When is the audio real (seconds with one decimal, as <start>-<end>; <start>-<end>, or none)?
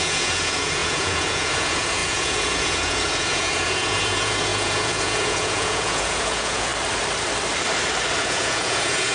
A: 6.7-8.2